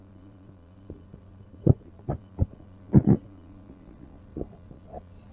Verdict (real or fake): fake